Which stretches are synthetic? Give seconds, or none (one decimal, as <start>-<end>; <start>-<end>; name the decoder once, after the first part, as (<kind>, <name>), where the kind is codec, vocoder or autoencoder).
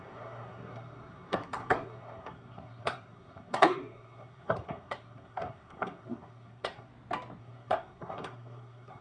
0.0-6.9 (codec, SNAC); 7.4-9.0